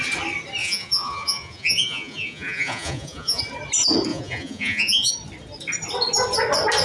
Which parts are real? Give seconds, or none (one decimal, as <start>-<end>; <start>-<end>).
0.0-0.6; 3.4-4.1; 5.1-6.8